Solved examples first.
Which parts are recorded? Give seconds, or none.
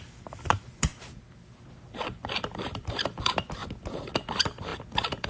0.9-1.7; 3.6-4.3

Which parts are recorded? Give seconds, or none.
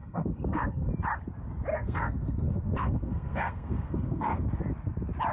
0.9-1.7; 4.4-5.3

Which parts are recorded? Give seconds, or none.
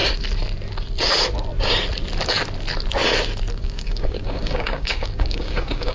0.0-3.5